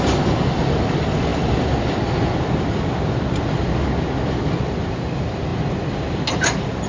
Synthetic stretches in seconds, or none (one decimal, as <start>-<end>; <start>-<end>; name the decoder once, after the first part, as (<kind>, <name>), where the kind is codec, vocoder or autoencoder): none